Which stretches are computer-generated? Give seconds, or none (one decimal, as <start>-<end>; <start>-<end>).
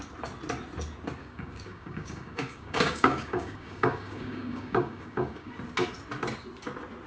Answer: 1.2-5.5